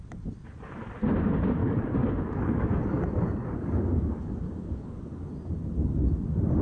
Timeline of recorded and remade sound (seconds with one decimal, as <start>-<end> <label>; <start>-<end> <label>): 0.0-1.6 recorded; 1.6-5.3 remade; 5.3-6.6 recorded